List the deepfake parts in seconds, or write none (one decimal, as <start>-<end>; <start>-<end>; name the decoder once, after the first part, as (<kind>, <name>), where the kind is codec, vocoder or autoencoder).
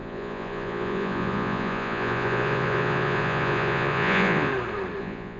0.0-4.5 (vocoder, Vocos); 5.0-5.4